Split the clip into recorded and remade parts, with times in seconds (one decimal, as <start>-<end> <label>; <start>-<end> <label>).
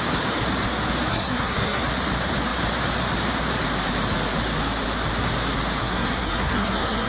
0.0-1.1 recorded; 1.1-1.8 remade; 1.8-5.8 recorded; 5.8-7.1 remade